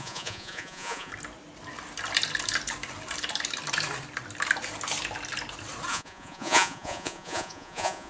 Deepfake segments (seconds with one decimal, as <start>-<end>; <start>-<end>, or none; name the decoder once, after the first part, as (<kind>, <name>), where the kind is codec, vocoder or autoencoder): 0.0-1.1 (vocoder, Vocos); 5.9-8.1